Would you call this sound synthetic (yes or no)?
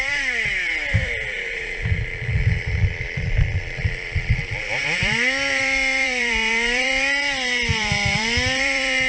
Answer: yes